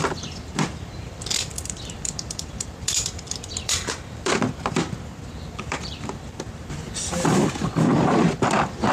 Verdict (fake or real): fake